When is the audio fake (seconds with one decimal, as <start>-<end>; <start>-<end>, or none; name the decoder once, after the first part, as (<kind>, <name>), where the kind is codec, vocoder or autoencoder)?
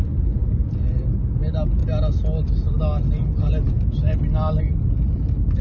none